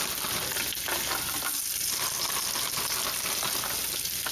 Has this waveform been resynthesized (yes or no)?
no